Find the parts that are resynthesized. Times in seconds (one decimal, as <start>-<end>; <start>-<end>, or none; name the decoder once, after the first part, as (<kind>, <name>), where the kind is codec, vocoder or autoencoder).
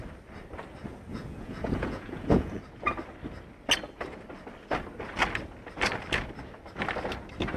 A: 1.1-2.6 (vocoder, Vocos)